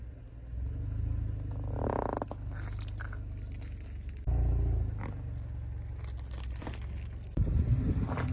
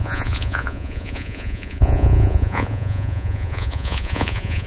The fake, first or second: second